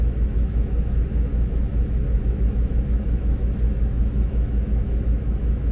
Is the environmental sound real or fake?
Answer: fake